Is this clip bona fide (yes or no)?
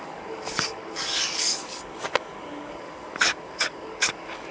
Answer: no